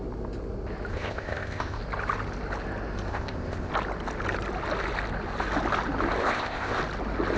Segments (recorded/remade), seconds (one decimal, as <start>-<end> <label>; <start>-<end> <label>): 0.0-0.9 recorded; 0.9-1.8 remade; 1.8-3.1 recorded; 3.1-3.7 remade; 3.7-6.2 recorded; 6.2-6.8 remade; 6.8-7.4 recorded